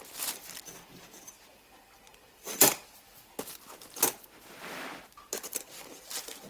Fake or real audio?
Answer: fake